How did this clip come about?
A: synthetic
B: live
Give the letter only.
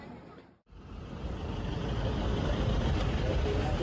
A